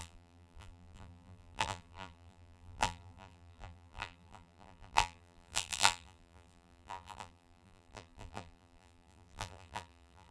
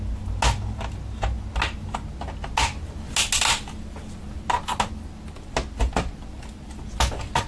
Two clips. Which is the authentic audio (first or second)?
second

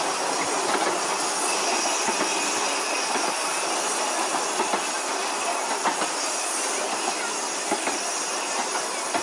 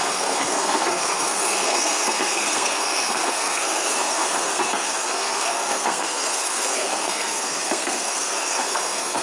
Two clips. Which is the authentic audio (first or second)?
first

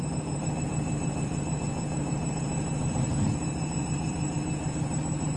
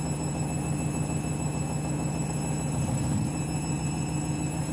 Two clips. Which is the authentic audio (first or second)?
second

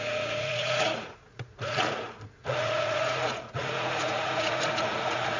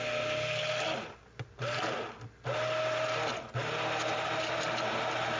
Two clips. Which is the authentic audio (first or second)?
second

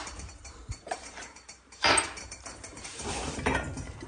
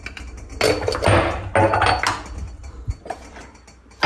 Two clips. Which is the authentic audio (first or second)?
second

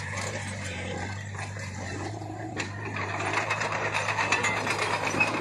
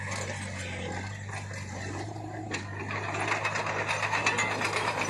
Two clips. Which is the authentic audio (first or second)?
second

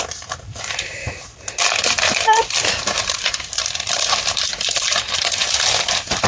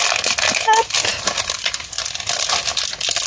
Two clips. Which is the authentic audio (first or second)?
second